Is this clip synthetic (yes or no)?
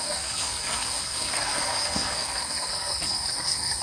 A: yes